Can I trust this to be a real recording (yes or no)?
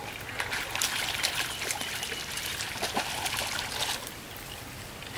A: yes